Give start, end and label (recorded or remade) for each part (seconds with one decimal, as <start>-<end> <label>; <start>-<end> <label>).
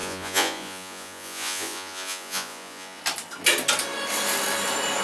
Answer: 0.0-3.0 remade; 3.0-5.0 recorded